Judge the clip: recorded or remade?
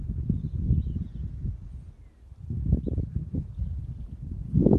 recorded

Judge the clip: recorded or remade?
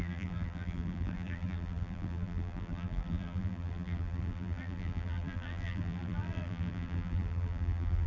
remade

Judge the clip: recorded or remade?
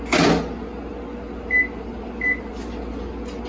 recorded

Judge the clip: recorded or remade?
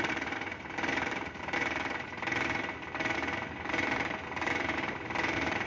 recorded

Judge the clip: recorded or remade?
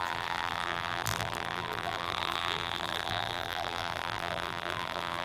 remade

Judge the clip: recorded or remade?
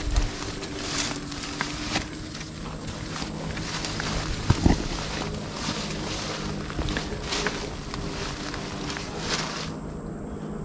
recorded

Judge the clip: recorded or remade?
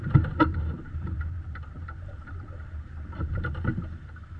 remade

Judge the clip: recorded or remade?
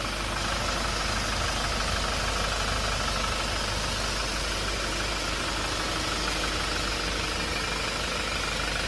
recorded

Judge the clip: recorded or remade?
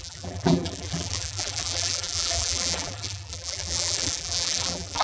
remade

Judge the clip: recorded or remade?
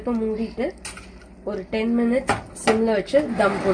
recorded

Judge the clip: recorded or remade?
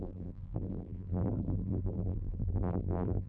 remade